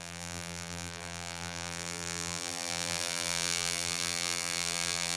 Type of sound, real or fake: fake